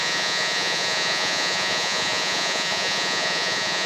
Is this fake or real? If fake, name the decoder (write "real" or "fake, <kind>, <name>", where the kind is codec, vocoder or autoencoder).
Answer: fake, vocoder, Vocos